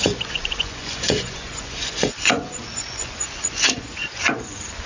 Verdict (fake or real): fake